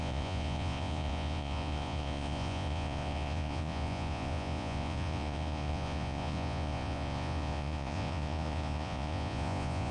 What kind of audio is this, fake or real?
fake